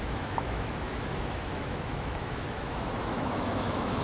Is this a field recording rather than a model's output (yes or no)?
no